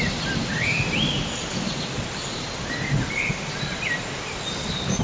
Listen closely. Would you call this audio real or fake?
real